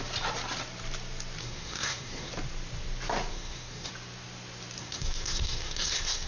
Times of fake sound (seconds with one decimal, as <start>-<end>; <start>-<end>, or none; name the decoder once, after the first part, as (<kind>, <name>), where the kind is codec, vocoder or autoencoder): 1.4-2.3 (codec, SNAC); 3.3-3.9; 4.8-6.3